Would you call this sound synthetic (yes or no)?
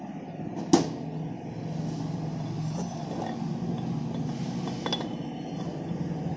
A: no